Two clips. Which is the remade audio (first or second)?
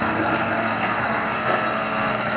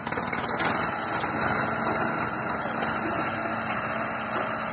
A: first